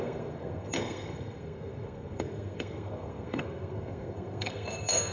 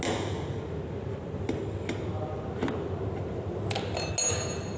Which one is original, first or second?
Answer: second